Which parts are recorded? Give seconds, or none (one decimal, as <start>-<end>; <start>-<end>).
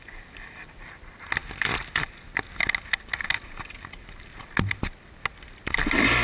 0.0-6.2